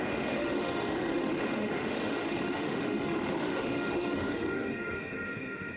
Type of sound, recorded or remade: remade